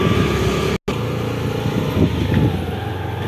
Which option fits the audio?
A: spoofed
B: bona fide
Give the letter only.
B